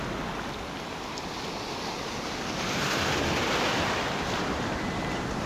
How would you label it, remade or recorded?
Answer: recorded